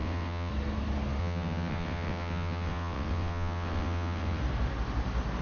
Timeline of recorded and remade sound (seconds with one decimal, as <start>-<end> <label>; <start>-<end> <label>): 0.0-0.5 remade; 0.5-1.2 recorded; 1.2-4.4 remade; 4.4-5.4 recorded